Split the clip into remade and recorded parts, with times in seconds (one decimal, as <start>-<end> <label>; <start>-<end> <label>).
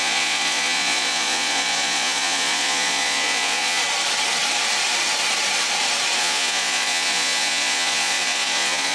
0.0-3.8 remade; 3.8-6.2 recorded; 6.2-8.9 remade